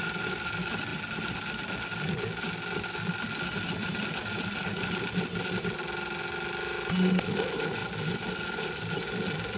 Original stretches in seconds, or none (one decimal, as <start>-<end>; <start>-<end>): 0.0-9.6